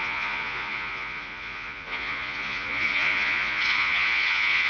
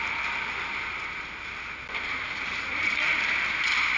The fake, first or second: first